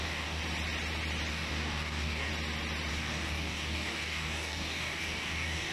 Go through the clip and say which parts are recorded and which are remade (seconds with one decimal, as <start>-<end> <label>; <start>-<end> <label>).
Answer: 0.0-0.4 remade; 0.4-1.3 recorded; 1.3-2.3 remade; 2.3-2.9 recorded; 2.9-5.7 remade